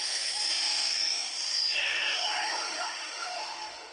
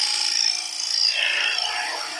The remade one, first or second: first